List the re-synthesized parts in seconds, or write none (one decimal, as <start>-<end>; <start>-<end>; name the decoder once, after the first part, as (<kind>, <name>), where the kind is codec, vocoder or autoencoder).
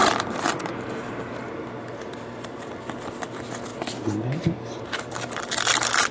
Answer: none